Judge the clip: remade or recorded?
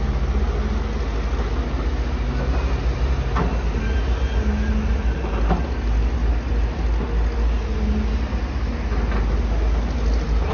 recorded